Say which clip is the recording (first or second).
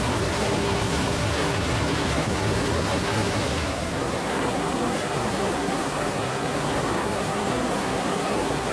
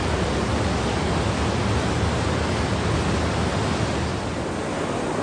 second